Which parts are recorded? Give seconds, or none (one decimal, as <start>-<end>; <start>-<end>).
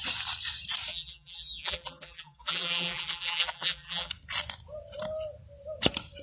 0.0-0.9; 4.1-6.2